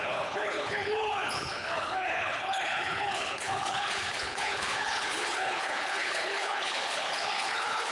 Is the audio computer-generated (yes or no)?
yes